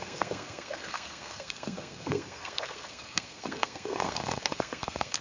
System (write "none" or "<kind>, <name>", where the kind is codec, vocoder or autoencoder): codec, SNAC